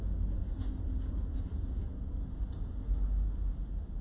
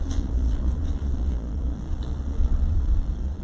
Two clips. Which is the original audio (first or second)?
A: first